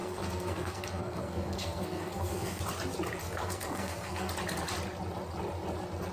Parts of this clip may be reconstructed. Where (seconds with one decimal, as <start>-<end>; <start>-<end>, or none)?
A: 0.0-2.6; 3.2-4.3